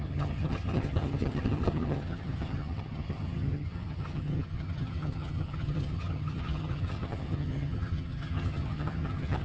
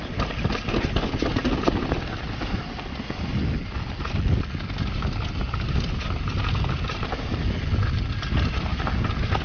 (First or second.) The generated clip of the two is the first